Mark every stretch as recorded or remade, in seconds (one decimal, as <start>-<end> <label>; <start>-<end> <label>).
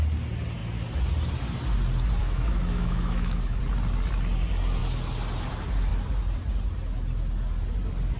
0.0-2.2 recorded; 2.2-3.6 remade; 3.6-8.2 recorded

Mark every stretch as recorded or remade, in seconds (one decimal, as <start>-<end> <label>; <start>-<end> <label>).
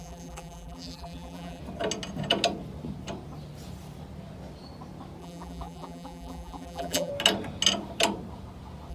0.0-1.6 remade; 1.6-5.2 recorded; 5.2-7.1 remade; 7.1-8.9 recorded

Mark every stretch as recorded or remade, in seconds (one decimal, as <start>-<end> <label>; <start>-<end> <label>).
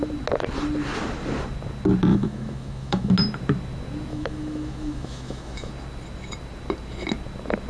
0.0-2.1 recorded; 2.1-3.1 remade; 3.1-4.1 recorded; 4.1-5.7 remade; 5.7-7.7 recorded